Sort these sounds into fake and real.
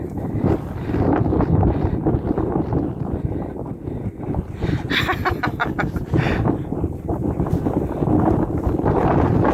real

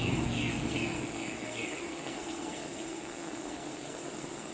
fake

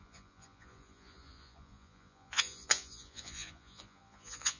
fake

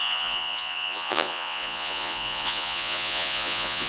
fake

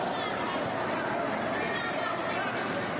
real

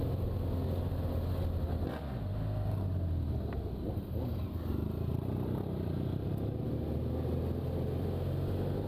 real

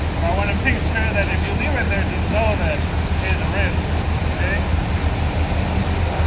real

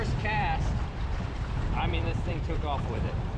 fake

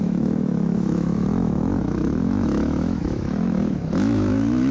fake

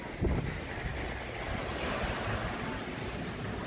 real